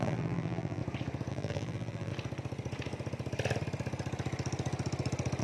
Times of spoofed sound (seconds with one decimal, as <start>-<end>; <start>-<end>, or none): 0.0-0.8; 1.3-2.1

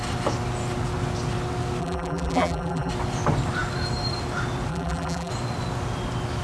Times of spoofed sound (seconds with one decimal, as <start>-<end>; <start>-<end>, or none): 1.8-2.9; 4.7-5.3

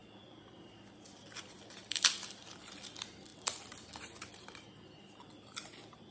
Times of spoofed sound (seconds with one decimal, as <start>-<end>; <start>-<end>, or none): 0.0-2.9; 3.3-6.1

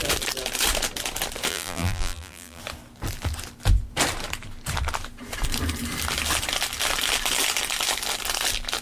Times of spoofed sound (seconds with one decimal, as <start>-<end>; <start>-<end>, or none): 1.5-2.6

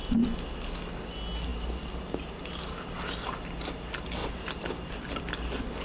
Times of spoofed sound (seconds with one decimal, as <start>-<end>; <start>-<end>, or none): 1.5-2.4; 4.2-5.2